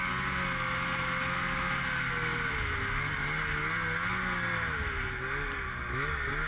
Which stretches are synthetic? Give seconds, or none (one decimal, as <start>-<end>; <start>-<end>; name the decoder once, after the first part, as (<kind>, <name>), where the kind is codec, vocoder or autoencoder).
none